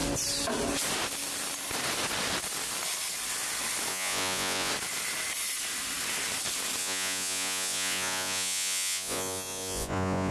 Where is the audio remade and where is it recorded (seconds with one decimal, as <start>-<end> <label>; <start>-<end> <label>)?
0.0-3.9 recorded; 3.9-4.7 remade; 4.7-6.8 recorded; 6.8-10.3 remade